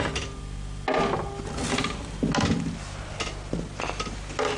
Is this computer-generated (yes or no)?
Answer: no